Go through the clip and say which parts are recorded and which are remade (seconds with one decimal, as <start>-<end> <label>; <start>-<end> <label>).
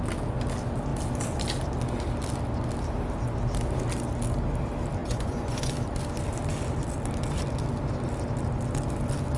0.0-5.0 recorded; 5.0-5.7 remade; 5.7-9.4 recorded